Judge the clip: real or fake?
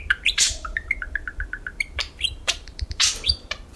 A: fake